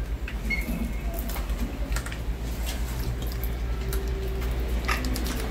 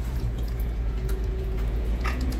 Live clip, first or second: first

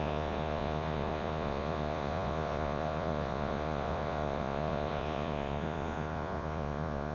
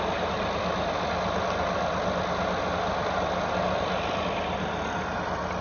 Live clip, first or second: second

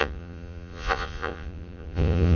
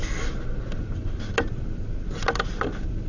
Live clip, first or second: second